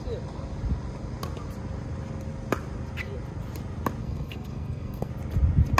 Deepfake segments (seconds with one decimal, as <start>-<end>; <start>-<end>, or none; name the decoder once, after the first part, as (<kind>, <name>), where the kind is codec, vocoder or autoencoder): 4.0-5.1 (codec, SNAC)